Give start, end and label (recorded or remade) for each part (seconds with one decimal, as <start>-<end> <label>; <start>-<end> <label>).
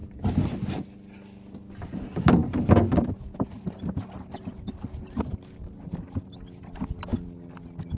0.0-8.0 recorded